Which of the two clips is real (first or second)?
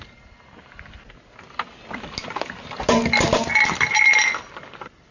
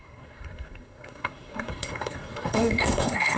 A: first